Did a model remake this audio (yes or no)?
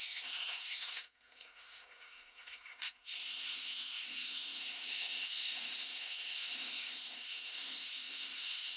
yes